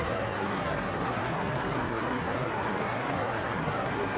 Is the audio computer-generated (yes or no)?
yes